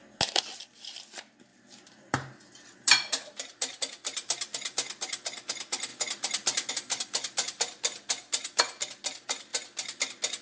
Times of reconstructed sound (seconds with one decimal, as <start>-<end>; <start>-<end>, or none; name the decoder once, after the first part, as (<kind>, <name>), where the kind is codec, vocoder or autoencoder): 1.5-3.8 (vocoder, BigVGAN v2)